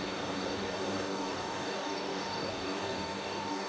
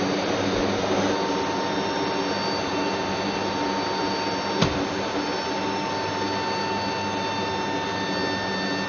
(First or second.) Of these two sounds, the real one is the second